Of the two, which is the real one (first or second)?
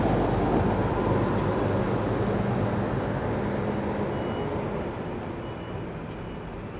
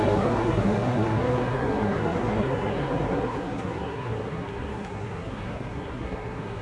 first